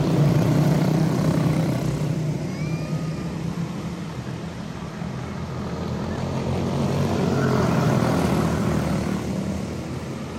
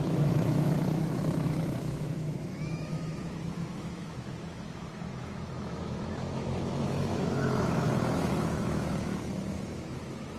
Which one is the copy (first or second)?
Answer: second